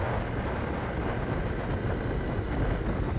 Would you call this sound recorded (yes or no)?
yes